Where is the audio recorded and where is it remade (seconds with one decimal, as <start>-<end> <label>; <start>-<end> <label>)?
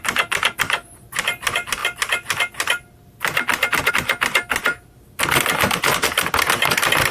0.0-7.1 recorded